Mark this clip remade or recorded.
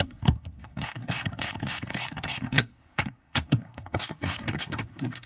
remade